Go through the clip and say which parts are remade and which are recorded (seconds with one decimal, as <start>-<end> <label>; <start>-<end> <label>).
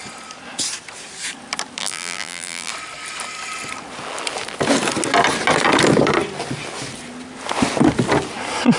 0.0-1.8 recorded; 1.8-2.7 remade; 2.7-8.8 recorded